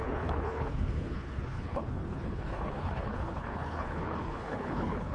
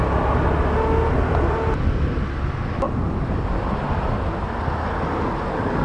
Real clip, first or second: second